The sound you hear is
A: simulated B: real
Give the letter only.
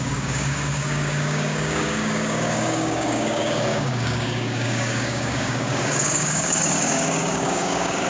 A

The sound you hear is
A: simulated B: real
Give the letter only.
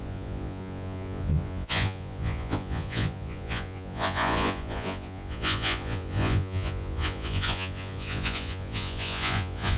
A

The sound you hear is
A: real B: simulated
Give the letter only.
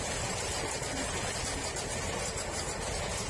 A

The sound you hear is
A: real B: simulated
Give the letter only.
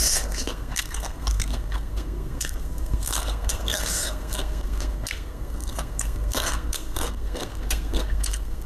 B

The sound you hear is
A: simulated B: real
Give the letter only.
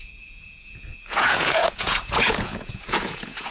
A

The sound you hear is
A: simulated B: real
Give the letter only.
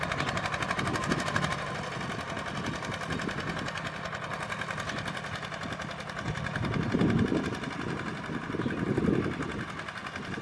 B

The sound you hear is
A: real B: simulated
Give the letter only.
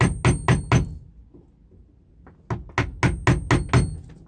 A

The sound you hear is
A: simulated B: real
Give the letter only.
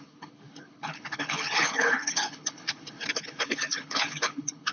A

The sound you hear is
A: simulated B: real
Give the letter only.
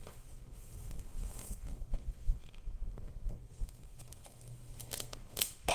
A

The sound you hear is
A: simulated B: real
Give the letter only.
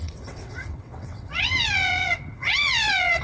A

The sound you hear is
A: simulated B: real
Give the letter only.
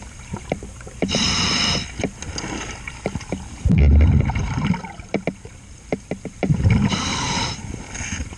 A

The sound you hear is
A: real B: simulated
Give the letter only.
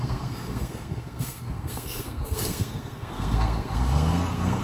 B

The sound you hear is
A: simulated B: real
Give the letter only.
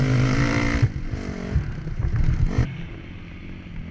B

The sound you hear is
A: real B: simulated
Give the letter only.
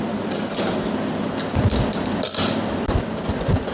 B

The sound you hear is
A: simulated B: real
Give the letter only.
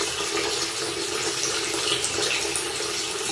B